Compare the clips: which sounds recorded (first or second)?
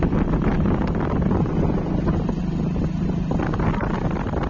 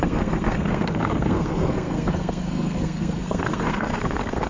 first